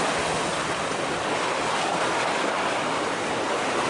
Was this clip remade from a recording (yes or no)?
no